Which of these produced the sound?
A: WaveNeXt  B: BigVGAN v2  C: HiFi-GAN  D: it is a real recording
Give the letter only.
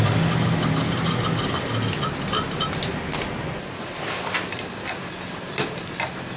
D